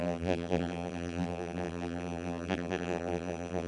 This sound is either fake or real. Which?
fake